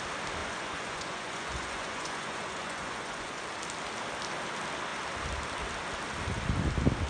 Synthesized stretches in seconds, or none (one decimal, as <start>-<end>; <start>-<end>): 0.4-3.4